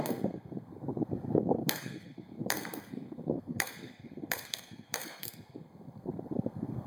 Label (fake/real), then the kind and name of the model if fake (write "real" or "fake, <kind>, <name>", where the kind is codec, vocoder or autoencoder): fake, codec, SNAC